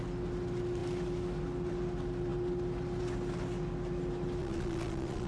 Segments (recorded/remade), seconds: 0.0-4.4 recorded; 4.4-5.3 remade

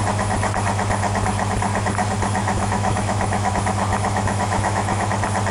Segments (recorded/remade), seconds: 0.0-2.4 recorded; 2.4-3.5 remade; 3.5-3.9 recorded; 3.9-5.1 remade; 5.1-5.5 recorded

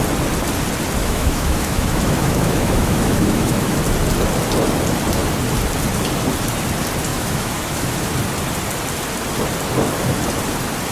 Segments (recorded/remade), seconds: 0.0-1.0 recorded; 1.0-3.8 remade; 3.8-7.1 recorded; 7.1-8.1 remade; 8.1-10.9 recorded

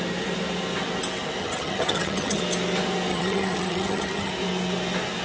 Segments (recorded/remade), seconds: 0.0-1.4 recorded; 1.4-2.4 remade; 2.4-3.1 recorded; 3.1-4.3 remade; 4.3-5.2 recorded

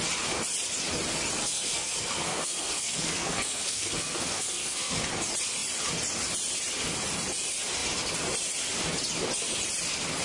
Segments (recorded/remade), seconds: 0.0-1.4 recorded; 1.4-5.1 remade; 5.1-10.2 recorded

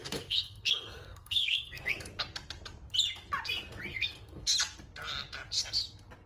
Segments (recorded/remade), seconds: 0.0-2.1 remade; 2.1-3.9 recorded; 3.9-4.5 remade; 4.5-6.3 recorded

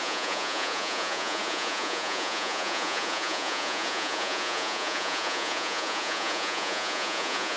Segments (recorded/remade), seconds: 0.0-7.6 remade

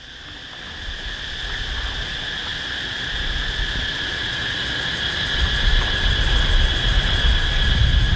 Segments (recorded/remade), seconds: 0.0-8.2 recorded